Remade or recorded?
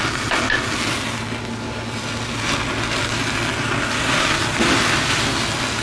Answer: recorded